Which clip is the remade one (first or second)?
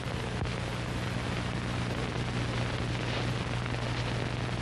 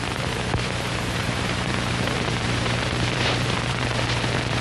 second